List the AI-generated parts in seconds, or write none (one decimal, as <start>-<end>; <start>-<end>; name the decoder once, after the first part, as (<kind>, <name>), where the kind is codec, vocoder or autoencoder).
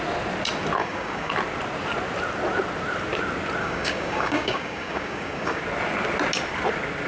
0.8-1.3 (codec, DAC); 3.6-5.6